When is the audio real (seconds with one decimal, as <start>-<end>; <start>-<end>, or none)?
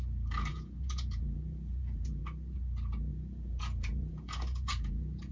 0.0-0.5; 2.2-3.1